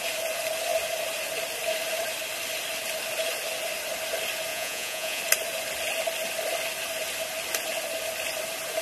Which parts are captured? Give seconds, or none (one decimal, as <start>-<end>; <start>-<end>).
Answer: 0.0-4.5; 5.2-8.8